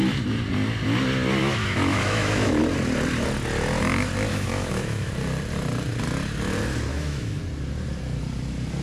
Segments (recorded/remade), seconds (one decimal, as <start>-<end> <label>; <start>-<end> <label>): 0.0-1.4 recorded; 1.4-2.6 remade; 2.6-4.3 recorded; 4.3-5.1 remade; 5.1-6.9 recorded; 6.9-7.4 remade; 7.4-8.8 recorded